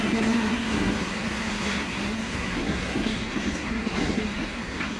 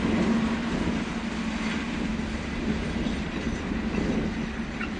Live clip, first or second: second